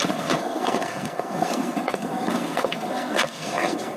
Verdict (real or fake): fake